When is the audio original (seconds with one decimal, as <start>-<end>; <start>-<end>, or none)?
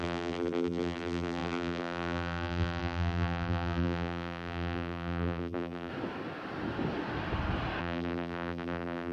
5.9-7.8